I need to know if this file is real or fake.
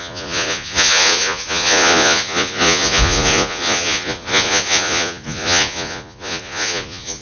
fake